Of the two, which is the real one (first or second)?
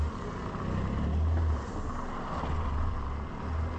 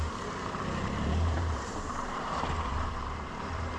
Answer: first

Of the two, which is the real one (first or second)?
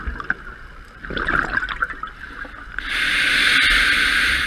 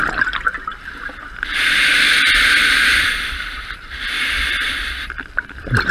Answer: first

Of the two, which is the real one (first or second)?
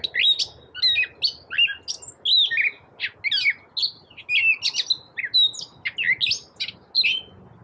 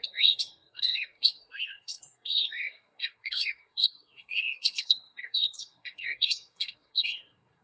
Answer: first